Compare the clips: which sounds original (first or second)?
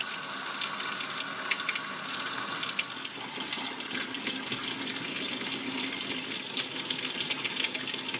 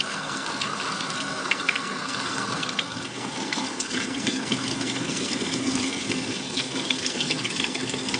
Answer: first